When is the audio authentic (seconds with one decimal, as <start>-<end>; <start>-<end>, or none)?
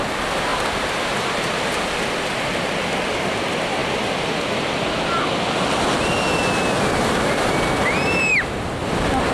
0.0-9.3